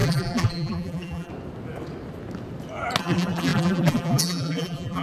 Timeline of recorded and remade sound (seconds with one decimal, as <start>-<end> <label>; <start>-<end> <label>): 0.0-1.3 remade; 1.3-3.0 recorded; 3.0-5.0 remade

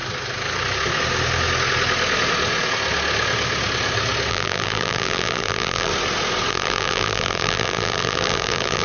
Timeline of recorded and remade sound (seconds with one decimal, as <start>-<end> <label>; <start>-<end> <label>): 0.0-4.3 recorded; 4.3-5.9 remade; 5.9-6.5 recorded; 6.5-8.8 remade

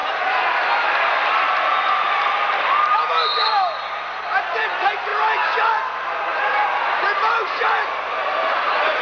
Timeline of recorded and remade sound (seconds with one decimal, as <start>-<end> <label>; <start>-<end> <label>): 0.0-4.6 remade; 4.6-6.3 recorded; 6.3-8.2 remade; 8.2-9.0 recorded

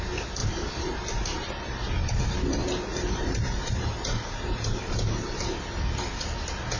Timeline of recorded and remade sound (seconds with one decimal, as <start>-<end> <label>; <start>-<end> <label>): 0.0-0.4 recorded; 0.4-2.2 remade; 2.2-2.9 recorded; 2.9-5.8 remade; 5.8-6.8 recorded

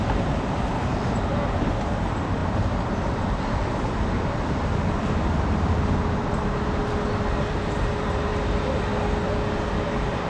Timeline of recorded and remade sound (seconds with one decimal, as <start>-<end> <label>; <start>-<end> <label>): 0.0-6.8 remade; 6.8-7.5 recorded; 7.5-8.3 remade; 8.3-9.7 recorded; 9.7-10.3 remade

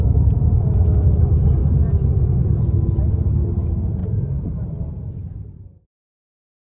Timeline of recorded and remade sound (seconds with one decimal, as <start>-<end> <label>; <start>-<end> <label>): 0.0-1.6 remade; 1.6-3.2 recorded; 3.2-6.7 remade

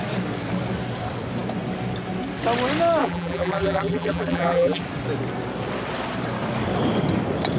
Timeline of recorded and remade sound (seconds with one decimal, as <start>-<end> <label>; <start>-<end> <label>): 0.0-3.0 recorded; 3.0-4.8 remade; 4.8-7.6 recorded